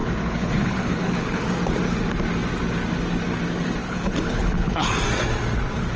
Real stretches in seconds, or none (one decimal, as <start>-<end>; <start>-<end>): 1.5-3.8; 4.9-6.0